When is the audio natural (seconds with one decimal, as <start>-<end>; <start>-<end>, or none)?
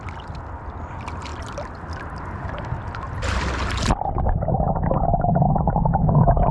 0.0-6.5